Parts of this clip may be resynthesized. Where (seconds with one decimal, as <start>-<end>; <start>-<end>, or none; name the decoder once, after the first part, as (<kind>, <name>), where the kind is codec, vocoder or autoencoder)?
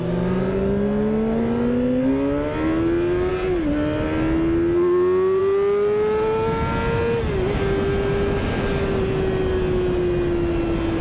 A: none